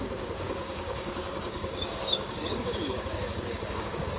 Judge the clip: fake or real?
fake